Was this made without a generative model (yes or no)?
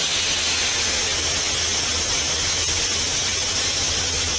yes